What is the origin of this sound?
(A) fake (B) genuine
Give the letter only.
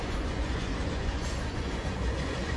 A